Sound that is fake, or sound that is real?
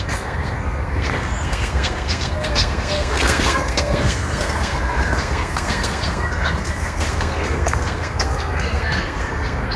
fake